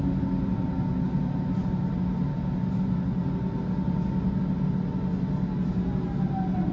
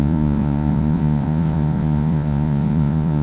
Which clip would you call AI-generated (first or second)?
second